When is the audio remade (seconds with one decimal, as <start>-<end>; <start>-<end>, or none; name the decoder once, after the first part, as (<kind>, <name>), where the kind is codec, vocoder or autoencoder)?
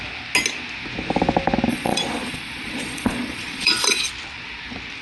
1.7-4.1 (vocoder, Vocos)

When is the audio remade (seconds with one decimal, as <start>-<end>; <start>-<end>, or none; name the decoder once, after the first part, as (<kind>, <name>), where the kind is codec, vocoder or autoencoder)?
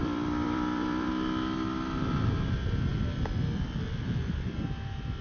0.0-1.1 (vocoder, BigVGAN v2)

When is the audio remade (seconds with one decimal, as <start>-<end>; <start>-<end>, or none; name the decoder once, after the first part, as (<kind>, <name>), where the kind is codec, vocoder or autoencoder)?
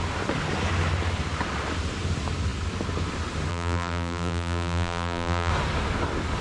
3.5-5.5 (vocoder, BigVGAN v2)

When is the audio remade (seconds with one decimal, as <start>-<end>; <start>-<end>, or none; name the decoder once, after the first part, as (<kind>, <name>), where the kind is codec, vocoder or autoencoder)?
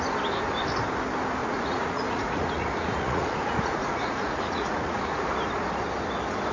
1.4-5.3 (vocoder, Vocos)